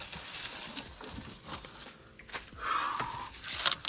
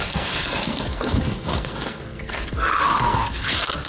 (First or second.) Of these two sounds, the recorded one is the first